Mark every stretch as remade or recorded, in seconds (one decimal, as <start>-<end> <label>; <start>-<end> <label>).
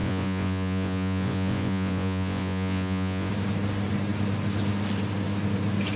0.0-3.3 remade; 3.3-6.0 recorded